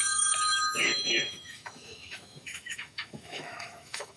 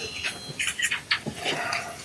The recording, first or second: second